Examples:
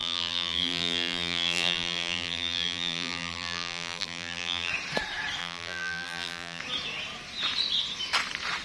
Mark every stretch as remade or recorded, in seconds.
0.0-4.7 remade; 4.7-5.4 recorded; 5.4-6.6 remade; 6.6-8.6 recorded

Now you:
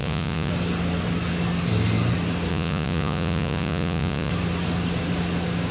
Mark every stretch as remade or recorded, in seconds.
0.0-0.5 remade; 0.5-2.5 recorded; 2.5-4.3 remade; 4.3-5.7 recorded

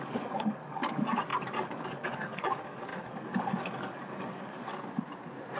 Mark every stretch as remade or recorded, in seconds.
0.0-4.7 remade; 4.7-5.6 recorded

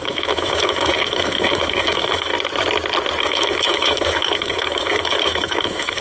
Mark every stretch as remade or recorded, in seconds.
0.0-2.3 remade; 2.3-3.2 recorded; 3.2-6.0 remade

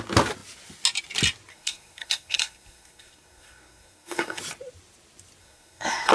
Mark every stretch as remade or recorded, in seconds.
0.0-1.5 recorded; 1.5-4.4 remade; 4.4-5.4 recorded; 5.4-6.1 remade

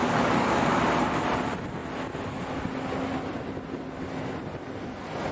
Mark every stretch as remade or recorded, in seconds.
0.0-0.8 remade; 0.8-5.3 recorded

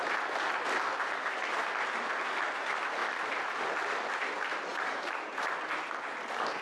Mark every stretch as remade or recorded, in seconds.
0.0-3.0 recorded; 3.0-3.6 remade; 3.6-4.7 recorded; 4.7-5.3 remade; 5.3-6.6 recorded